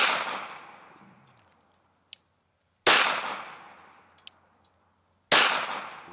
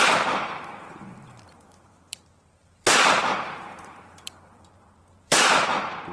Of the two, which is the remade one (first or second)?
second